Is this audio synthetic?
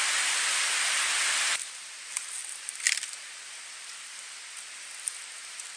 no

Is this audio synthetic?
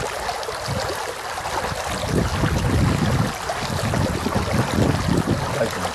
no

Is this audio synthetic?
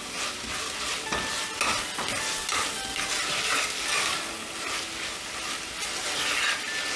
no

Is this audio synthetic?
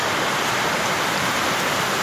yes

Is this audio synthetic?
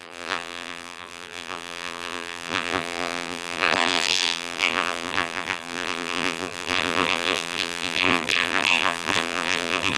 yes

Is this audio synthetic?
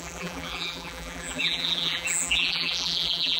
yes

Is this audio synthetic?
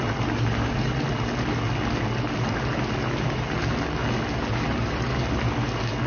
no